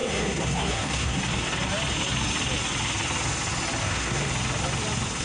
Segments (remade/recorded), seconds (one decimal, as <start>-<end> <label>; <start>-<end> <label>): 0.0-1.2 remade; 1.2-3.8 recorded; 3.8-4.3 remade; 4.3-5.2 recorded